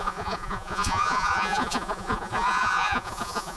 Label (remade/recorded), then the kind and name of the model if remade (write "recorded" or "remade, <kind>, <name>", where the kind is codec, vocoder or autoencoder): remade, vocoder, Vocos